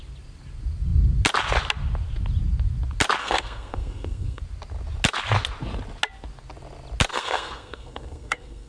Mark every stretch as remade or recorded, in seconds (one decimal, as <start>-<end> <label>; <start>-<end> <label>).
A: 0.0-3.2 recorded; 3.2-4.4 remade; 4.4-7.1 recorded; 7.1-8.7 remade

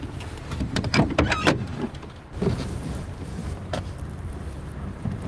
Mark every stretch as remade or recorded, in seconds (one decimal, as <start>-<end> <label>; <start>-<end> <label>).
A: 0.0-3.4 remade; 3.4-4.2 recorded; 4.2-5.3 remade

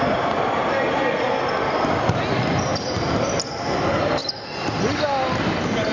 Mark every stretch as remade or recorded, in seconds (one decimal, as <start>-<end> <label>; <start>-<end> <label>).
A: 0.0-5.9 recorded

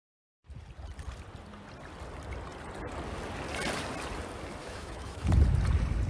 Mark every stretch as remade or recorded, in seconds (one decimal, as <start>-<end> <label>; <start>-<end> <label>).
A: 0.0-4.6 recorded; 4.6-5.3 remade; 5.3-6.1 recorded

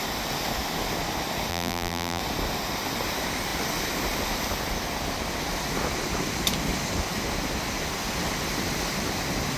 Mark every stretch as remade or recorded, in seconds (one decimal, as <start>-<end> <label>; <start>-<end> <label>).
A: 0.0-1.5 recorded; 1.5-2.2 remade; 2.2-9.6 recorded

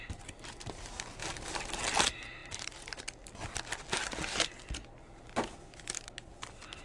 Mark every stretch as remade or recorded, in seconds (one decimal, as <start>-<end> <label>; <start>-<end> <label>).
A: 0.0-2.4 recorded; 2.4-3.3 remade; 3.3-6.8 recorded

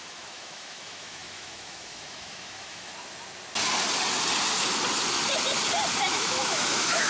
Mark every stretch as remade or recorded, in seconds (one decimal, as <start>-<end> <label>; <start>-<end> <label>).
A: 0.0-2.9 remade; 2.9-6.1 recorded; 6.1-7.1 remade